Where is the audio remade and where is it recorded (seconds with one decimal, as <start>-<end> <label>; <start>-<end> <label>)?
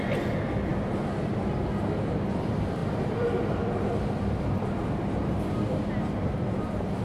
0.0-2.8 recorded; 2.8-7.0 remade